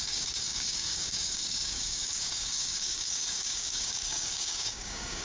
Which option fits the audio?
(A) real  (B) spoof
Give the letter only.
B